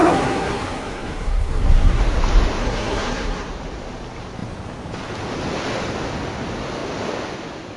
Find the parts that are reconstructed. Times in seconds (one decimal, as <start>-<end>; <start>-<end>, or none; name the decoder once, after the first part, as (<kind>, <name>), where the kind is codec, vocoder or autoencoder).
0.0-2.0 (codec, SNAC); 2.6-3.5